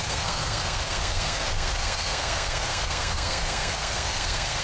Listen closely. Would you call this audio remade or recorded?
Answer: remade